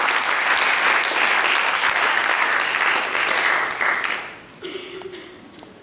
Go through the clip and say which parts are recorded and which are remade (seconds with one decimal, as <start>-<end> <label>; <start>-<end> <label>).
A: 0.0-5.8 recorded